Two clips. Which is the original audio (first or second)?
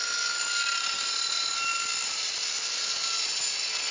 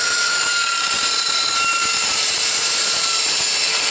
first